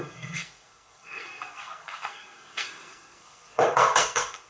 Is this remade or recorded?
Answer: remade